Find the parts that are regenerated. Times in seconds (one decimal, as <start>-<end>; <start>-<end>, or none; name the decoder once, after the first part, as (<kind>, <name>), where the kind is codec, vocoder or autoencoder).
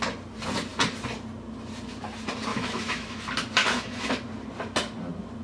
2.5-3.2 (autoencoder, DAC-VAE); 3.6-4.1